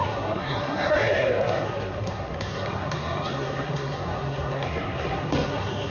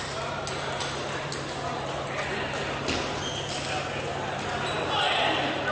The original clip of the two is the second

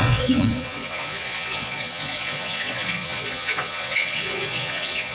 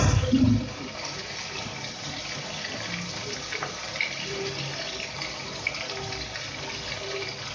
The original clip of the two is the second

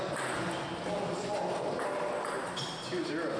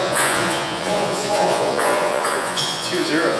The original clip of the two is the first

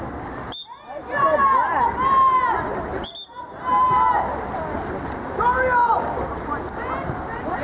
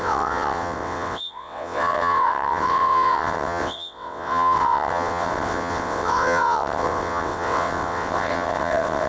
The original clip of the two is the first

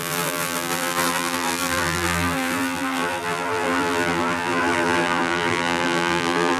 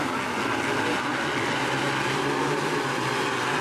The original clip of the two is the second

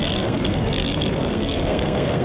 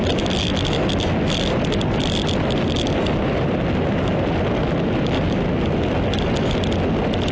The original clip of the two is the second